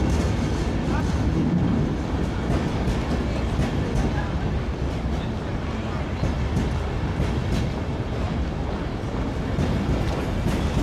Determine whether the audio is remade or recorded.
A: recorded